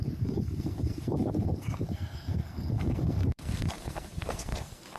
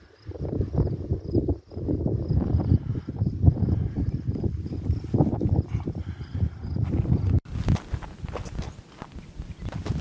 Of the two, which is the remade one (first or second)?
first